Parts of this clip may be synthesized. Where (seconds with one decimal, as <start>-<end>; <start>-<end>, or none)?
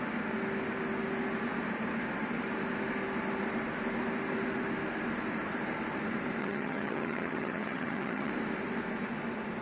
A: 6.4-8.3